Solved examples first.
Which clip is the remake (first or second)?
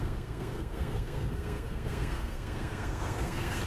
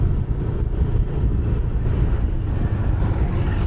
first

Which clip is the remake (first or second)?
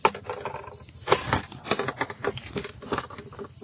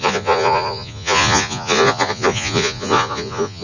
second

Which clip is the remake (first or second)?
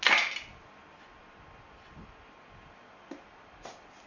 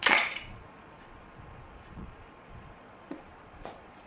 second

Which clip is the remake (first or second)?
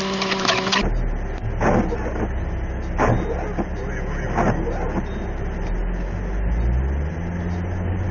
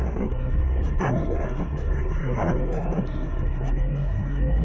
second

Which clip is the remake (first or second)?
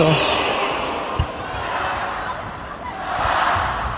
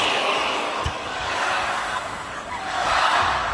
second